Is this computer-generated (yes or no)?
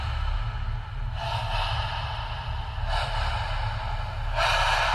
no